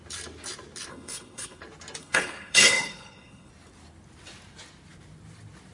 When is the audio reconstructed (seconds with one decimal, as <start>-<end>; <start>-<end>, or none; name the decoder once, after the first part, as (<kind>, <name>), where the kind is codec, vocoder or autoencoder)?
0.9-1.6 (codec, HILCodec); 2.0-3.5

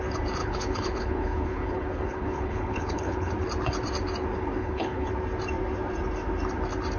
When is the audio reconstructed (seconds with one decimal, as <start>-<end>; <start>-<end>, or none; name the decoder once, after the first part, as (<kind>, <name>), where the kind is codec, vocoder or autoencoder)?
0.4-3.3 (codec, HILCodec); 4.6-5.1

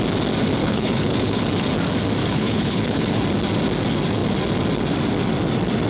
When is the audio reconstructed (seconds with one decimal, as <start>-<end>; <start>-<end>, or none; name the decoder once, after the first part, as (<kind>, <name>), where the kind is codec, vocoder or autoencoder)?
0.6-1.4 (codec, HILCodec); 2.2-3.2